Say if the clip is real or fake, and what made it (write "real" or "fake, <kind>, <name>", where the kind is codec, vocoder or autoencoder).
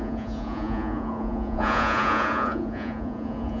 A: fake, vocoder, Vocos